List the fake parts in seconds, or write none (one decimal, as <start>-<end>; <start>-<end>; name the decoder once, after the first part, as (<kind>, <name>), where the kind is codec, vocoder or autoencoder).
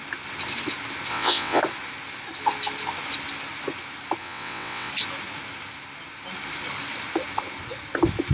1.1-1.6 (vocoder, WaveNeXt); 4.2-4.9